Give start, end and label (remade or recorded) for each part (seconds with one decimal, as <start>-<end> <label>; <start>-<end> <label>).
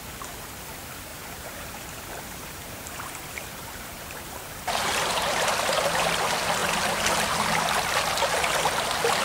0.0-1.1 recorded; 1.1-5.5 remade; 5.5-9.2 recorded